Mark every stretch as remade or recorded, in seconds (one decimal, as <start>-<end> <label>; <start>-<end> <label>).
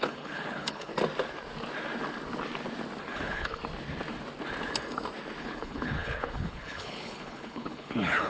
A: 0.0-0.9 remade; 0.9-3.0 recorded; 3.0-3.6 remade; 3.6-5.4 recorded; 5.4-8.3 remade